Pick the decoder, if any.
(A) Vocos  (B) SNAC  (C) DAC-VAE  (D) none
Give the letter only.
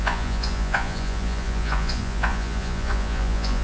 A